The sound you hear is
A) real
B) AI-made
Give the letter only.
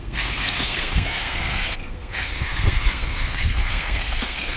B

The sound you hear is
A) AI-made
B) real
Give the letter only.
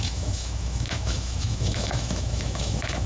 A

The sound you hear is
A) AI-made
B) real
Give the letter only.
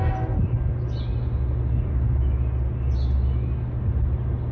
B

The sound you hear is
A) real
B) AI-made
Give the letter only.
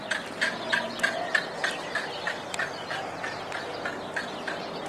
A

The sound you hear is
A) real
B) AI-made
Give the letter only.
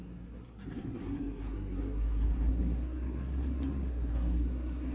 B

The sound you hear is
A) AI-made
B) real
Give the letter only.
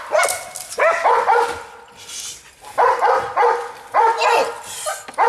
B